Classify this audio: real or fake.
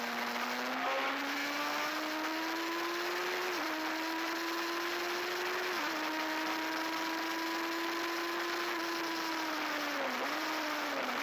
real